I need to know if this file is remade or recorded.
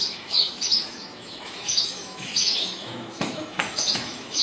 remade